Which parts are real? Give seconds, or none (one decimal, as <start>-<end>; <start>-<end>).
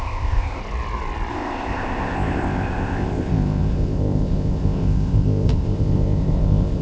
0.6-1.3